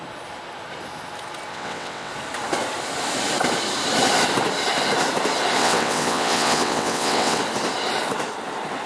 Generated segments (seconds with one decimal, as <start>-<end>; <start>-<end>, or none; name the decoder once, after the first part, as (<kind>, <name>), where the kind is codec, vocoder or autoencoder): 1.5-2.1 (vocoder, WaveNeXt); 5.6-7.4